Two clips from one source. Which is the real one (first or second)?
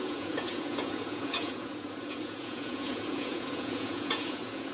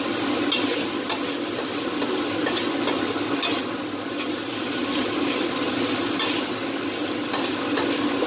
second